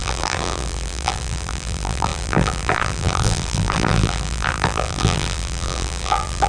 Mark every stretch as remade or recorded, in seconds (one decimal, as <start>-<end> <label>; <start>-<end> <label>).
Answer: 0.0-6.5 remade